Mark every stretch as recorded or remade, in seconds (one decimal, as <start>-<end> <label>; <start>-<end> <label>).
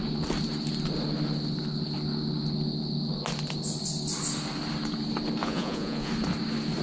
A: 0.0-5.4 recorded; 5.4-6.1 remade; 6.1-6.8 recorded